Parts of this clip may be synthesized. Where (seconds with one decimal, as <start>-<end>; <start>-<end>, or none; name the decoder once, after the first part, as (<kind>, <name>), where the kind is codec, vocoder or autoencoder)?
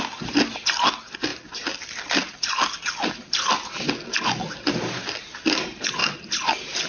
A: none